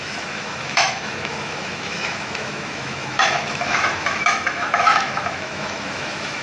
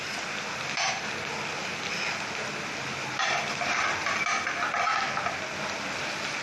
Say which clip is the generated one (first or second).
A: first